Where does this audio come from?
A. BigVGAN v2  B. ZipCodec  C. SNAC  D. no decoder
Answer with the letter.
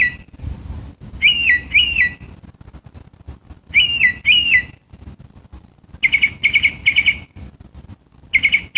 D